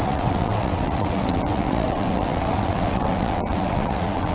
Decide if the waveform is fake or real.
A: fake